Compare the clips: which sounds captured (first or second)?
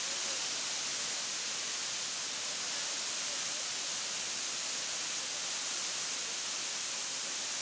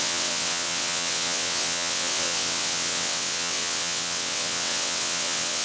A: first